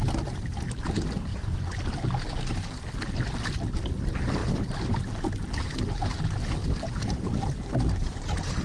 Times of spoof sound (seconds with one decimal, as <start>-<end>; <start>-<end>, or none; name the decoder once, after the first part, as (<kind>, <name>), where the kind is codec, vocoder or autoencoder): none